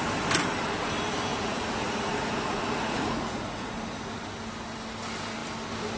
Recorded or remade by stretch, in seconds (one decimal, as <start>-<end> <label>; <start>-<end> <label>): 0.0-1.3 recorded; 1.3-3.7 remade; 3.7-6.0 recorded